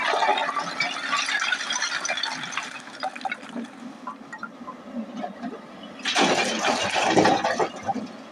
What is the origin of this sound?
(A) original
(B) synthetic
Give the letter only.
A